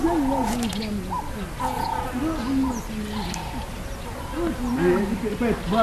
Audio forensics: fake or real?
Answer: real